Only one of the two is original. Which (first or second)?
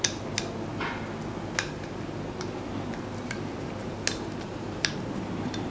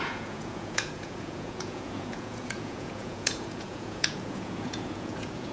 first